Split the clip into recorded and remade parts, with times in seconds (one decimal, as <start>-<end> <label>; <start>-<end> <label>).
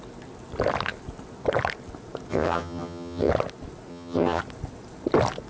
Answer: 0.0-2.3 recorded; 2.3-3.3 remade; 3.3-3.9 recorded; 3.9-4.4 remade; 4.4-5.5 recorded